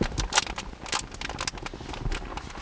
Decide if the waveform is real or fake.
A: real